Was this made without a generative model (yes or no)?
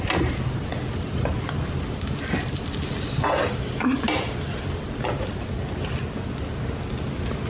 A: yes